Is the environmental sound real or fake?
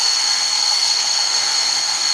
fake